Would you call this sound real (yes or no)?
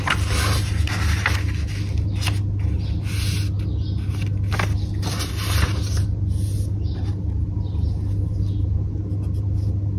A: yes